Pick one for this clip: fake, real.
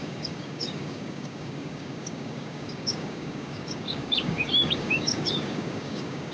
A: fake